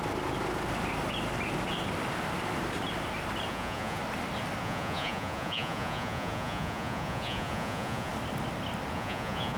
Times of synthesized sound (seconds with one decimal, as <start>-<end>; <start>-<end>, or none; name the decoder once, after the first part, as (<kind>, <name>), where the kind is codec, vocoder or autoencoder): 3.5-4.0 (vocoder, Vocos); 4.6-8.1; 8.9-9.6